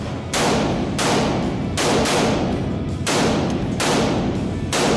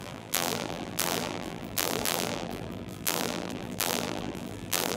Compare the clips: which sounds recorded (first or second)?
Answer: first